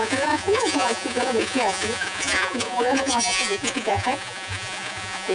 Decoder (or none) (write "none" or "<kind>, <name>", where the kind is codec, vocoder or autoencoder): vocoder, Vocos